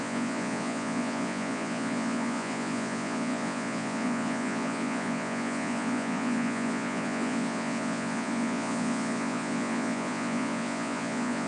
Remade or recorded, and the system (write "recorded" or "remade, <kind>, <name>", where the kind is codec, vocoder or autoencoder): remade, vocoder, Vocos